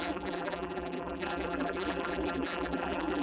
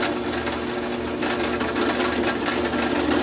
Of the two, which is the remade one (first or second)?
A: first